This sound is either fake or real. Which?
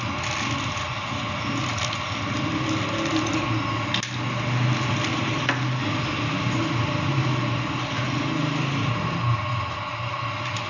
real